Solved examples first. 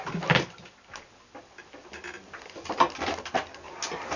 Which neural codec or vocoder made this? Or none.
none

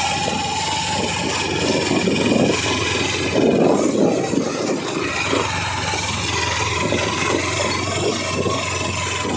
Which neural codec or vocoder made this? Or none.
none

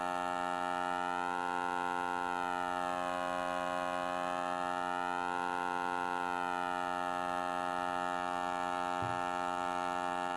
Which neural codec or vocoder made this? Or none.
none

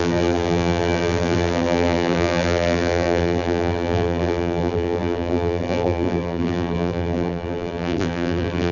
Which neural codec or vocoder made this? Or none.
vocoder, BigVGAN v2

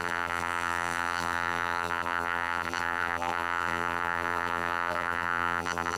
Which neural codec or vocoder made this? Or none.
vocoder, BigVGAN v2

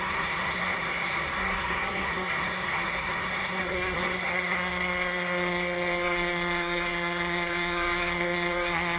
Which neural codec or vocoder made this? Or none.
codec, SNAC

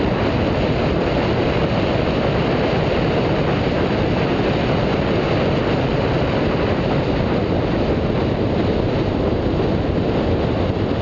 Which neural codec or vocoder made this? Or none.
none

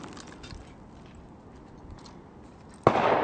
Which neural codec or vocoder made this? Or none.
none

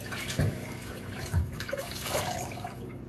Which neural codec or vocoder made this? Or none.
codec, DAC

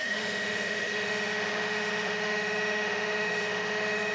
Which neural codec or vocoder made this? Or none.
autoencoder, DAC-VAE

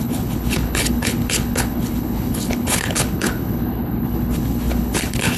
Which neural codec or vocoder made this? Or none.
codec, HILCodec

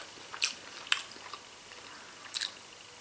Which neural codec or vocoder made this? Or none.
none